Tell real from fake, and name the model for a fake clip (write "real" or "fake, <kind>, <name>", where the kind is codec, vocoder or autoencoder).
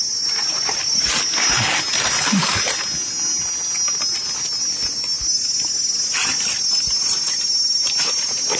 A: real